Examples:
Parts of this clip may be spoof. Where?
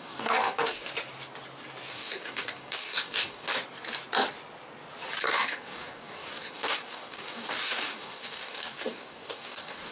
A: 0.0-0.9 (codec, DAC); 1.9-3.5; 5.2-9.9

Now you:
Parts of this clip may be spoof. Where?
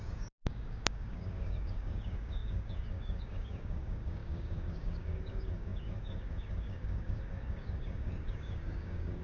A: 0.0-9.2 (codec, DAC)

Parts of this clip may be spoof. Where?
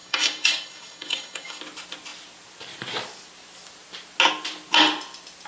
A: 0.0-1.6 (codec, DAC)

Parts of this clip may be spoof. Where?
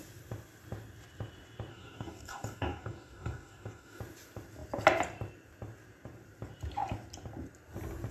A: 1.7-4.0 (codec, DAC)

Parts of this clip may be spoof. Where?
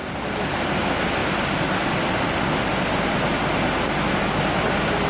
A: none